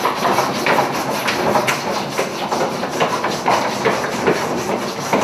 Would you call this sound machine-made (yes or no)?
yes